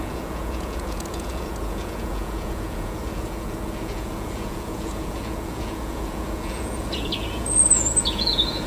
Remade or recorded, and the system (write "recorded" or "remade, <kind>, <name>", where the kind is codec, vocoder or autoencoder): remade, vocoder, Vocos